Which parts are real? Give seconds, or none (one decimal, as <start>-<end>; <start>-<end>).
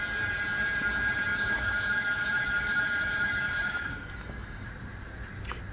0.0-1.3; 4.7-5.7